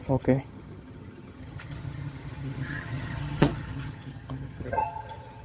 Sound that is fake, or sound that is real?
fake